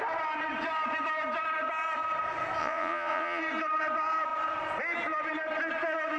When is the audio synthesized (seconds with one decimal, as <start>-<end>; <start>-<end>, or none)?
2.6-3.4